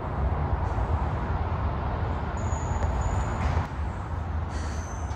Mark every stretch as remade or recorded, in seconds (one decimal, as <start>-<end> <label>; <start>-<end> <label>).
0.0-5.2 recorded